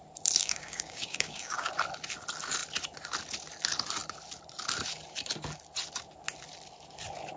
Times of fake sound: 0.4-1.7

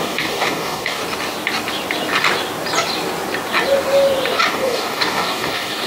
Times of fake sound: 0.0-1.0; 4.5-5.9

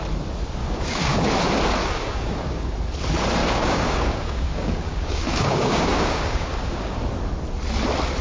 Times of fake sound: 0.6-1.2; 1.8-2.7; 3.4-7.0

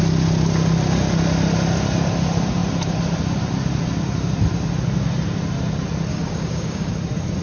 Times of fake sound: 6.1-6.9

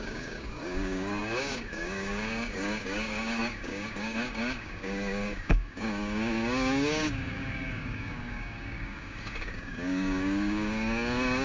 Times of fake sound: 0.0-11.4

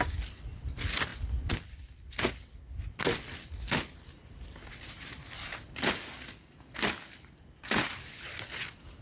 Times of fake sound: none

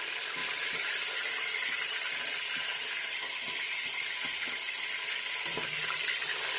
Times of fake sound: none

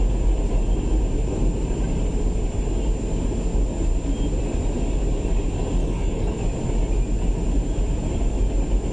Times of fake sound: 5.8-6.4